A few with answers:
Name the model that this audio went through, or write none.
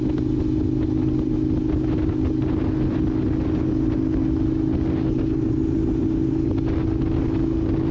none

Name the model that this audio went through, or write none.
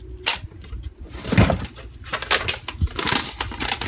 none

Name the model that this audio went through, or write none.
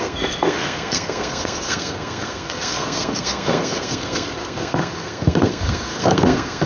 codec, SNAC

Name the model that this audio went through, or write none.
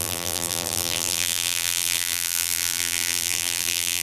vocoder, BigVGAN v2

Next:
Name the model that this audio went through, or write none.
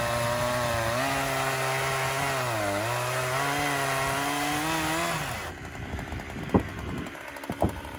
none